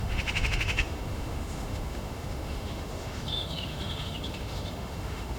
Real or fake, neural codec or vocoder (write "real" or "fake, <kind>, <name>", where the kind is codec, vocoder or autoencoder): fake, autoencoder, DAC-VAE